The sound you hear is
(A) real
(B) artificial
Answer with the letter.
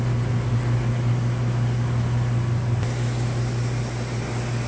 A